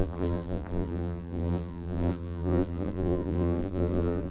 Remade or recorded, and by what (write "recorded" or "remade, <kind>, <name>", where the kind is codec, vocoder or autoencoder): remade, vocoder, BigVGAN v2